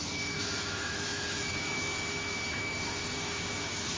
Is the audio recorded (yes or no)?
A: no